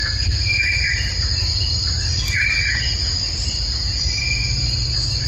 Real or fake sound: real